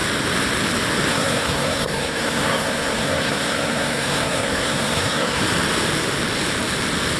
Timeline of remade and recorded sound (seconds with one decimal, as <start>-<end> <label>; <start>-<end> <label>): 0.0-1.1 recorded; 1.1-5.4 remade; 5.4-7.2 recorded